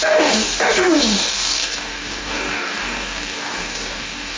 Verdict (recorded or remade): remade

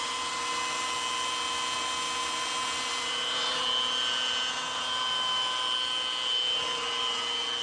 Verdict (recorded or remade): recorded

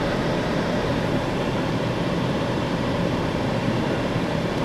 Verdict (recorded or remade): remade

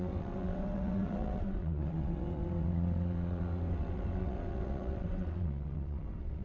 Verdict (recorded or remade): remade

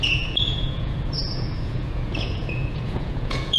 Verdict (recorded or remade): remade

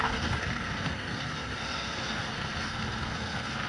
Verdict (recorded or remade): remade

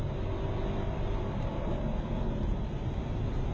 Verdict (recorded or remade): recorded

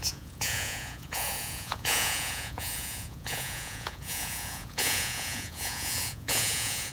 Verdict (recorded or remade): remade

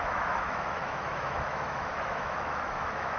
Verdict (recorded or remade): remade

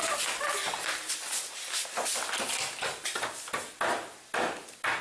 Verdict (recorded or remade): recorded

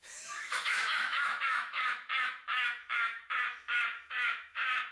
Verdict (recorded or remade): remade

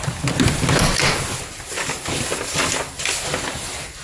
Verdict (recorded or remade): recorded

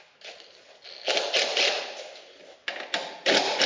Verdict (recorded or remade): recorded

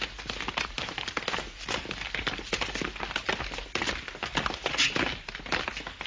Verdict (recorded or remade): recorded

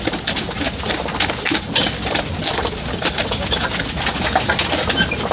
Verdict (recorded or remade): recorded